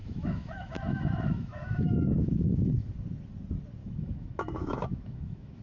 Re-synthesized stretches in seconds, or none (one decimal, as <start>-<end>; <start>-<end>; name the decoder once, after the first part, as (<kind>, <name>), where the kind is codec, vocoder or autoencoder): 0.0-2.9 (autoencoder, DAC-VAE); 3.8-5.6